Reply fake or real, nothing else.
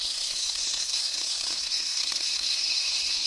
fake